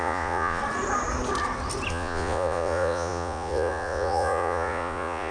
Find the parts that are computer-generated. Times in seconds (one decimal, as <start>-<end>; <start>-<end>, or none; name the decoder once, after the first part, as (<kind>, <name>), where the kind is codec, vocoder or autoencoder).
0.0-0.6 (vocoder, Vocos); 1.9-5.3